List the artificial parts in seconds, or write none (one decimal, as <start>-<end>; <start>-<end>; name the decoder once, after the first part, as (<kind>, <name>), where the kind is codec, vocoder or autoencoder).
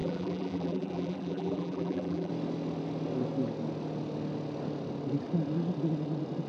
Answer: 0.0-2.3 (vocoder, BigVGAN v2)